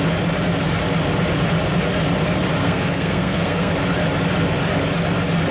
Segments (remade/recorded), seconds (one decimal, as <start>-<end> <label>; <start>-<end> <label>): 0.0-2.6 recorded; 2.6-3.7 remade; 3.7-5.5 recorded